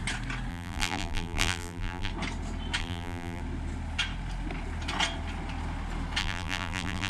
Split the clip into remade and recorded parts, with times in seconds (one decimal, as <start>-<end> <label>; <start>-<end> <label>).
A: 0.0-0.5 recorded; 0.5-2.1 remade; 2.1-2.8 recorded; 2.8-3.4 remade; 3.4-6.2 recorded; 6.2-7.1 remade